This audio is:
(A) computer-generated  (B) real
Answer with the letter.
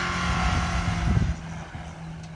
B